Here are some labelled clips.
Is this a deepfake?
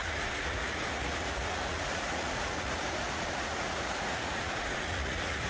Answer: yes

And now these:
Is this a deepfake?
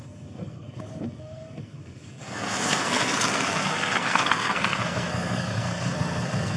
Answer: yes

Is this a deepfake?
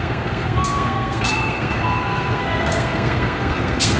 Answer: yes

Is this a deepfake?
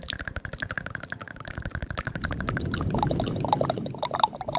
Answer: yes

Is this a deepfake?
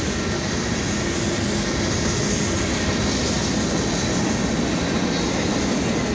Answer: no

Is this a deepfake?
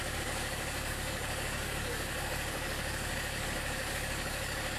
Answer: yes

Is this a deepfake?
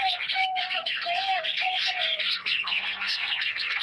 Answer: yes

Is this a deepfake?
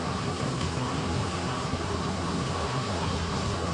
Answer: yes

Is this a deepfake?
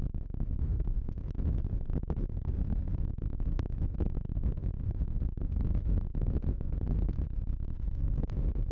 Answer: yes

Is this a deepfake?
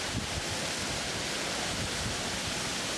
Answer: no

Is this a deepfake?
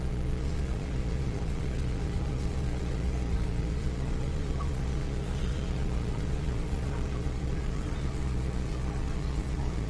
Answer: yes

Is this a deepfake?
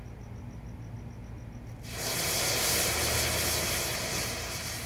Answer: no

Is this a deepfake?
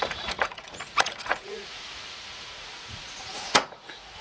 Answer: yes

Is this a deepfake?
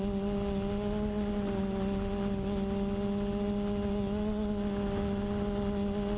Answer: no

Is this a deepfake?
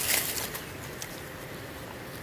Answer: no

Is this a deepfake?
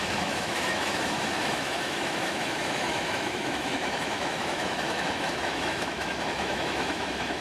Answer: yes